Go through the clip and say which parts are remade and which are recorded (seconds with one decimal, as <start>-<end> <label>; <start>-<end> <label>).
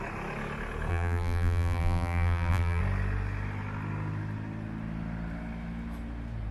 0.0-0.9 recorded; 0.9-2.8 remade; 2.8-6.5 recorded